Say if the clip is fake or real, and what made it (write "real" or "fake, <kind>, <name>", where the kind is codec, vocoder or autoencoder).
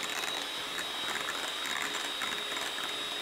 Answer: real